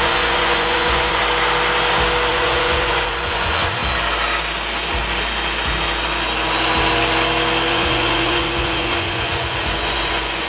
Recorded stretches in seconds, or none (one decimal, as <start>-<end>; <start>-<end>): 1.2-2.3; 3.8-7.7